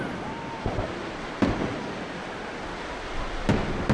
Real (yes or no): yes